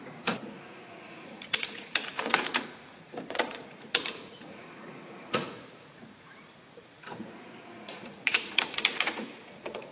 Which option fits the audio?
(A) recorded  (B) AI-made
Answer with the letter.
B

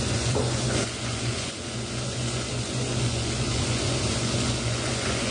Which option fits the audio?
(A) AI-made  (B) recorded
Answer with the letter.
A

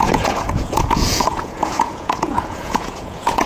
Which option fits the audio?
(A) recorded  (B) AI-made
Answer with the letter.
B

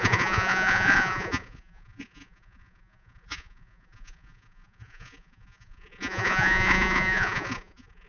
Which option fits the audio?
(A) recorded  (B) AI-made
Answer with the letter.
B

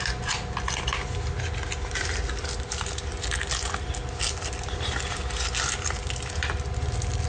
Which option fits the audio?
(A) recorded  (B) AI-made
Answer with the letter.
A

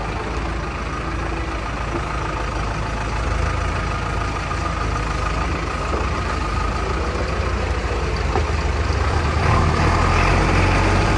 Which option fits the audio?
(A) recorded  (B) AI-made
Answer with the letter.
A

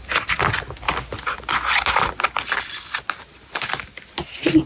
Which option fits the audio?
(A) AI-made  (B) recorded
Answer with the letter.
B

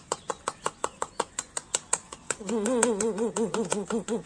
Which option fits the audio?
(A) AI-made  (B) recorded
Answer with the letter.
A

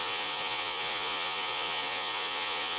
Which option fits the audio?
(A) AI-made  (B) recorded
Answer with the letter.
A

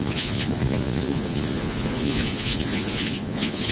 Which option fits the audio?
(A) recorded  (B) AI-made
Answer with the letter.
B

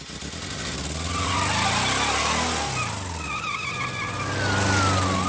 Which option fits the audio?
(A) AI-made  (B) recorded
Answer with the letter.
B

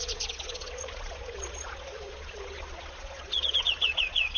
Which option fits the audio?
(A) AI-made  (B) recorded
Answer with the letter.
A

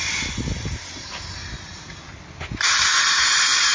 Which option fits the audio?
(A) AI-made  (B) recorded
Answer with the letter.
B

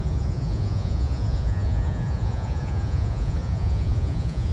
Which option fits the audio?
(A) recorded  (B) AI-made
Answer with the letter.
B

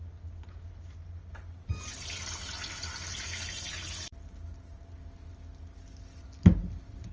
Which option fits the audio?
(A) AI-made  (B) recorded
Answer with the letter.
B